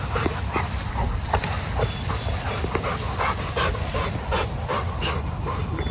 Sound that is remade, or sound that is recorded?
recorded